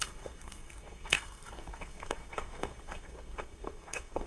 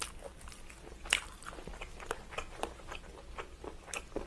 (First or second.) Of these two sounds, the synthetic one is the first